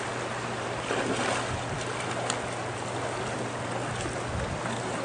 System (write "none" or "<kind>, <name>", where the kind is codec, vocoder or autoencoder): none